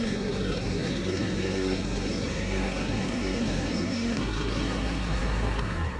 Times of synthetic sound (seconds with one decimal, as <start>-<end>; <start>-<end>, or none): 0.0-6.0

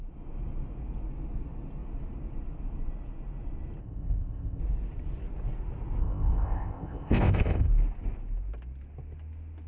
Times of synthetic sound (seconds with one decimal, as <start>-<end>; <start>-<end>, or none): 3.8-4.6; 6.0-7.7

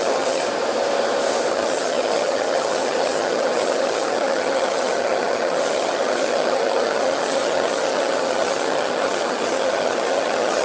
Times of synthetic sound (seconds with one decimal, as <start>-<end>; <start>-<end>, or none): 0.0-0.4; 1.5-10.6

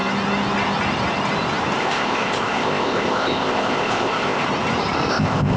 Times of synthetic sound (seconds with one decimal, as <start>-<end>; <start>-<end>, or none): 1.8-4.4; 5.1-5.6

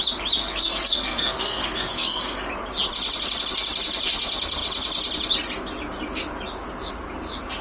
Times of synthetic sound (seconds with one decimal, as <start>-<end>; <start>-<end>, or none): 0.4-2.4

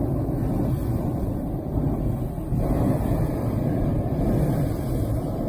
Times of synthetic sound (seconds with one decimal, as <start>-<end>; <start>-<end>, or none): none

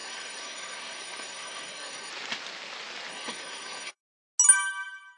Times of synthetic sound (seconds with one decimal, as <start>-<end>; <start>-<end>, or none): 0.0-2.1; 3.1-4.0